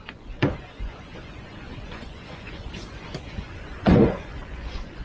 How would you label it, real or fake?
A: fake